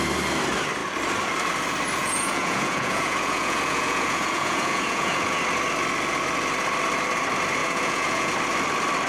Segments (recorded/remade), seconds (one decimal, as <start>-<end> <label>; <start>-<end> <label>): 0.0-2.0 recorded; 2.0-5.4 remade; 5.4-7.6 recorded; 7.6-8.3 remade; 8.3-9.1 recorded